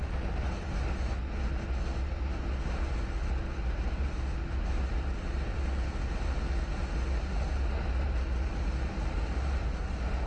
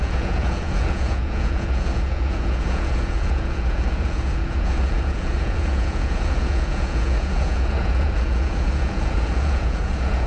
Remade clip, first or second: second